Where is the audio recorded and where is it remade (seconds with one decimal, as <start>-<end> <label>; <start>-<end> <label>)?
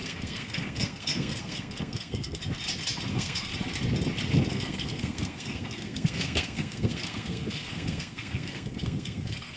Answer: 0.0-2.4 remade; 2.4-3.1 recorded; 3.1-3.5 remade; 3.5-4.5 recorded; 4.5-9.6 remade